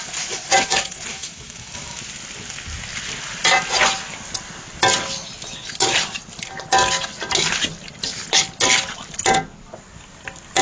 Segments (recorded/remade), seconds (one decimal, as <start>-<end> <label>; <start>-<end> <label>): 0.0-1.1 recorded; 1.1-2.0 remade; 2.0-10.6 recorded